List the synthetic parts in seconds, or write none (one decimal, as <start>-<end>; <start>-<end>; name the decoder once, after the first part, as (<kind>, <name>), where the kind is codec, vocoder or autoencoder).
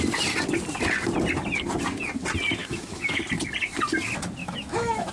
2.6-3.2 (autoencoder, DAC-VAE); 4.4-5.1